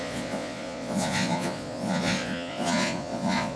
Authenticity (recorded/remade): remade